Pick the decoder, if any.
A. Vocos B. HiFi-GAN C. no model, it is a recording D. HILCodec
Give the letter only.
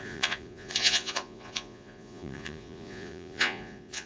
A